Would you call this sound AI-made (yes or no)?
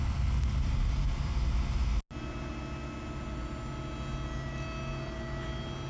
no